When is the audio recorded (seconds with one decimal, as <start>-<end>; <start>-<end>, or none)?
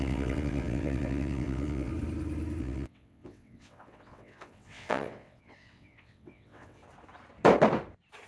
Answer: 1.9-2.6; 6.8-8.3